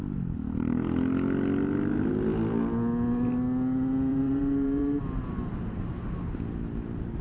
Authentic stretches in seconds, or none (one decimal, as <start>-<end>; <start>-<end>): 0.0-4.1; 5.0-7.2